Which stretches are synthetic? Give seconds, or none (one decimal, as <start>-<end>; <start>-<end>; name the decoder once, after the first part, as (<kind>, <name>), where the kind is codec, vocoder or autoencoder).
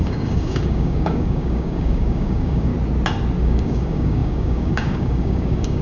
0.0-2.7 (codec, DAC); 3.4-5.8